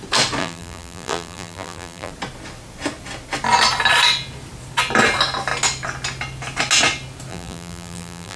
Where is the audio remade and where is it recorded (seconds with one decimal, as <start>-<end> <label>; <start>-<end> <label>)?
0.0-0.4 recorded; 0.4-2.1 remade; 2.1-7.3 recorded; 7.3-8.4 remade